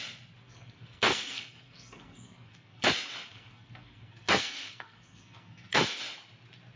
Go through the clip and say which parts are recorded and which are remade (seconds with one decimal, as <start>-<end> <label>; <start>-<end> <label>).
0.0-0.4 recorded; 0.4-2.9 remade; 2.9-3.3 recorded; 3.3-6.0 remade; 6.0-6.8 recorded